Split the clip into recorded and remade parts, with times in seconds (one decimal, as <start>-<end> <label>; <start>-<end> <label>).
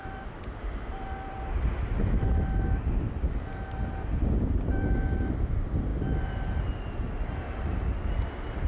0.0-8.7 recorded